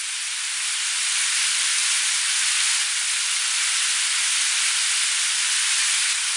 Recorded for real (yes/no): yes